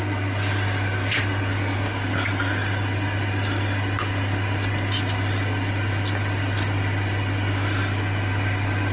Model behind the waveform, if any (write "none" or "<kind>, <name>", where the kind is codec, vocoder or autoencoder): none